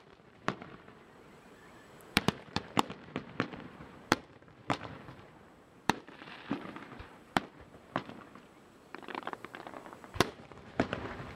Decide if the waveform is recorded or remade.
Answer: remade